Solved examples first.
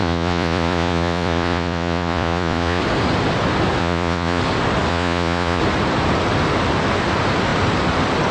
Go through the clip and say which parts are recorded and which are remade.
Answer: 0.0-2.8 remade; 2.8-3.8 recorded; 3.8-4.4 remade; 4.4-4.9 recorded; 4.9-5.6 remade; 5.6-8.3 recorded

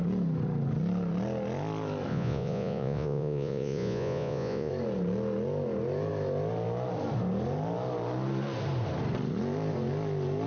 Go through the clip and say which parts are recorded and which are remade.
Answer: 0.0-2.1 recorded; 2.1-4.7 remade; 4.7-10.5 recorded

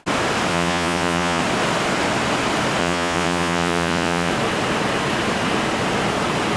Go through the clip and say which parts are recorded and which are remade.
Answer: 0.0-0.5 recorded; 0.5-1.4 remade; 1.4-2.8 recorded; 2.8-4.3 remade; 4.3-6.6 recorded

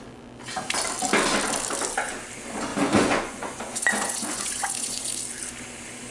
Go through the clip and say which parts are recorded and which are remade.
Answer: 0.0-2.7 recorded; 2.7-5.2 remade; 5.2-6.1 recorded

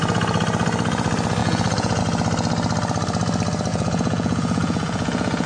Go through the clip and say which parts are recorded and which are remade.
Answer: 0.0-1.4 recorded; 1.4-2.0 remade; 2.0-3.7 recorded; 3.7-5.5 remade

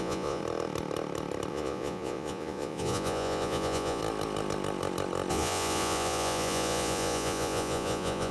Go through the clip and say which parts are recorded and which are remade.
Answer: 0.0-0.4 remade; 0.4-1.5 recorded; 1.5-4.0 remade; 4.0-5.3 recorded; 5.3-8.3 remade